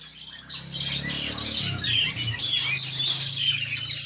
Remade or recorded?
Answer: recorded